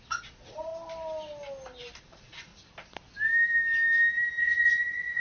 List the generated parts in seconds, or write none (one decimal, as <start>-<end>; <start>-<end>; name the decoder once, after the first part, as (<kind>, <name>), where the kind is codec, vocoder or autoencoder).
0.0-0.7 (vocoder, Vocos); 2.0-2.5; 4.4-5.2